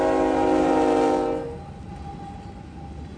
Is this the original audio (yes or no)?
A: yes